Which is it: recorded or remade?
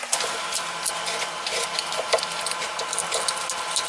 recorded